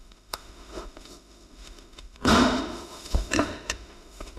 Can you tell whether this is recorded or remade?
remade